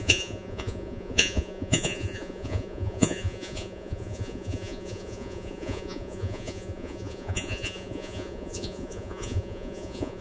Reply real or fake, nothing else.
fake